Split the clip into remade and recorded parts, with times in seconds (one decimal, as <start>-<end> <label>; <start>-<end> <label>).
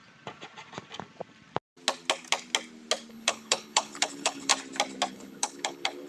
0.0-3.1 recorded; 3.1-4.5 remade; 4.5-5.1 recorded; 5.1-6.1 remade